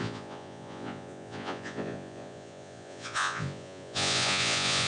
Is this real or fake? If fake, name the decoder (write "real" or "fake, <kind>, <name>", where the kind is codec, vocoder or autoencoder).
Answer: fake, vocoder, Vocos